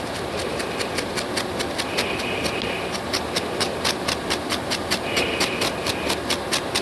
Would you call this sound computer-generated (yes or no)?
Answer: no